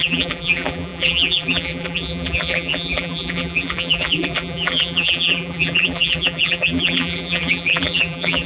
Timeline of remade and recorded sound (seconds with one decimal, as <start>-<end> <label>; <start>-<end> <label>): 0.0-8.5 remade